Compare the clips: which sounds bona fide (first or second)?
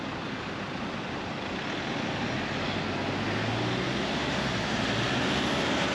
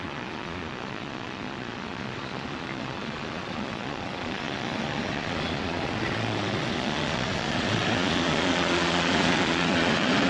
first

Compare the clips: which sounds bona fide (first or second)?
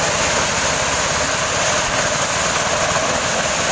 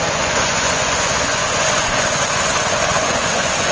first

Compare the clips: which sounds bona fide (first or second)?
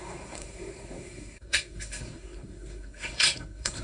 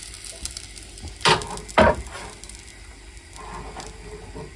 second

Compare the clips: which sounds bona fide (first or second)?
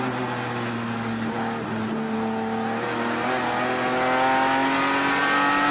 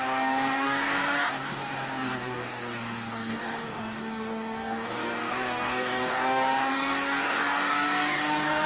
first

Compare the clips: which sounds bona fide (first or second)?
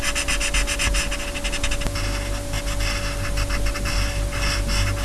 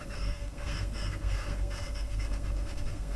first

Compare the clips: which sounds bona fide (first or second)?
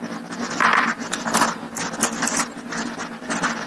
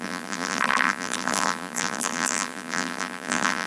first